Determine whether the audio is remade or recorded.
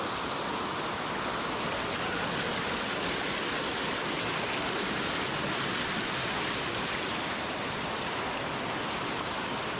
recorded